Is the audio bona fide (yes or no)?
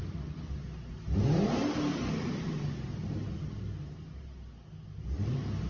yes